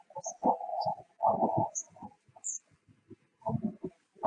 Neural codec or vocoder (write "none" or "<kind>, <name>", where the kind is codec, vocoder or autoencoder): none